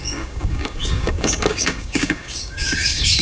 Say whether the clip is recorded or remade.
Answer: remade